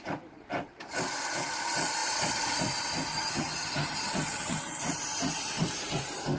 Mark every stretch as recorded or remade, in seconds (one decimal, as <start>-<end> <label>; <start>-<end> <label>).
0.0-3.1 recorded; 3.1-4.8 remade; 4.8-6.4 recorded